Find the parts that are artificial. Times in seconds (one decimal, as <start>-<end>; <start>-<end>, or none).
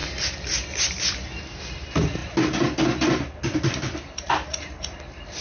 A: none